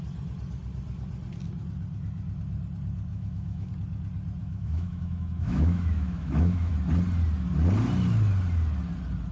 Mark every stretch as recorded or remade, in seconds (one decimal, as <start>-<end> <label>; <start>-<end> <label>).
0.0-3.1 recorded; 3.1-3.7 remade; 3.7-4.4 recorded; 4.4-6.7 remade; 6.7-9.3 recorded